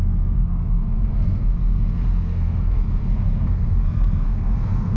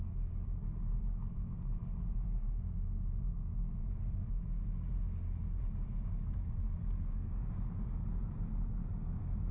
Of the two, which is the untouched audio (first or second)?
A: second